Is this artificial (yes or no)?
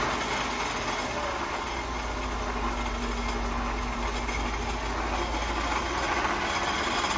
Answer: no